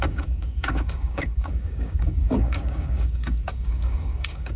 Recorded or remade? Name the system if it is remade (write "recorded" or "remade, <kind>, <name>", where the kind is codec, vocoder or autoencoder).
remade, codec, DAC